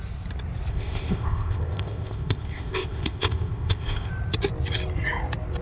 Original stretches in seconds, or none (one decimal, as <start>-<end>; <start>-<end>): 0.0-0.7; 4.1-5.6